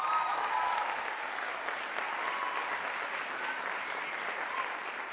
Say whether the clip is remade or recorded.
recorded